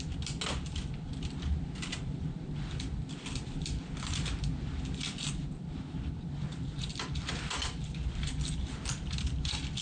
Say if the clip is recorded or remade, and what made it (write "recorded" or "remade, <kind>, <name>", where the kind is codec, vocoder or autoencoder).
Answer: recorded